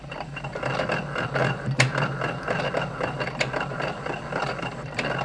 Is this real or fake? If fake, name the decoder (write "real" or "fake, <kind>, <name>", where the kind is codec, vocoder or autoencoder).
fake, vocoder, BigVGAN v2